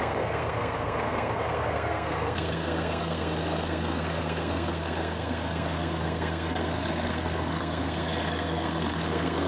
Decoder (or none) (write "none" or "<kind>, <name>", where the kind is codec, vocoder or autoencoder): codec, SNAC